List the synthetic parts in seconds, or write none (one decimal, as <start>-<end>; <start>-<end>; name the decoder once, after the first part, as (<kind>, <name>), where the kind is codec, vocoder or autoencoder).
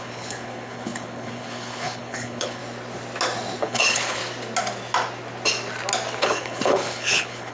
0.0-2.6 (codec, HILCodec); 3.6-4.2; 6.2-7.5